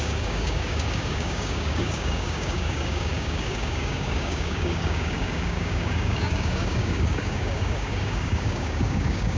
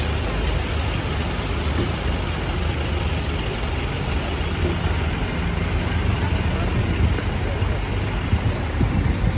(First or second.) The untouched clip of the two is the second